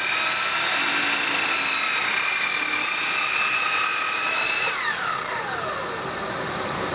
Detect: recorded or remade recorded